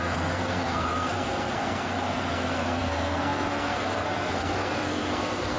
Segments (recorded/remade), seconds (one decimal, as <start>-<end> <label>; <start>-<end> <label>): 0.0-5.6 remade